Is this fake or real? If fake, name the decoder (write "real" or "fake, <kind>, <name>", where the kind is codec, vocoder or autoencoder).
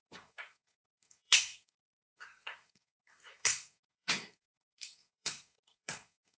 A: fake, codec, SNAC